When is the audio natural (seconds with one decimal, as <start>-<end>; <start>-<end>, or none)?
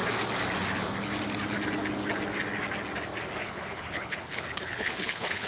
0.0-3.4